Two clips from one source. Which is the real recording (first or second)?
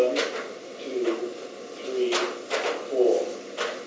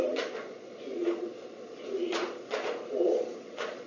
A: first